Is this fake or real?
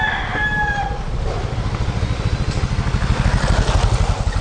real